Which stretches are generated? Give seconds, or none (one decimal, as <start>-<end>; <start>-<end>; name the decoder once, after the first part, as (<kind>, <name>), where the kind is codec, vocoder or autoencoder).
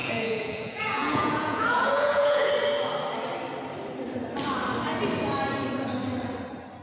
0.0-2.5 (vocoder, Vocos)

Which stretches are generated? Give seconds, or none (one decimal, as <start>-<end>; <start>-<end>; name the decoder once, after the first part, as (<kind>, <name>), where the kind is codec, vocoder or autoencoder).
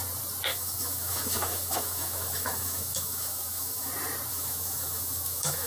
0.5-3.9 (autoencoder, DAC-VAE); 4.3-5.7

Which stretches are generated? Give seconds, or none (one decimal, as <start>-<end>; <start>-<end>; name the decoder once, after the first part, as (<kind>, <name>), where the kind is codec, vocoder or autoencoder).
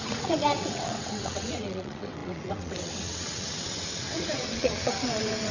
0.0-5.5 (vocoder, WaveNeXt)